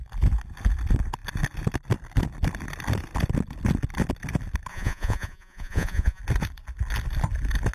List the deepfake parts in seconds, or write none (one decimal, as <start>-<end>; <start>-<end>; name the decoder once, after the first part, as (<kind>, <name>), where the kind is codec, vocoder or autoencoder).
4.7-6.2 (vocoder, Vocos)